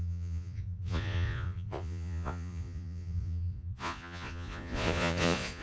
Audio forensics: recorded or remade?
remade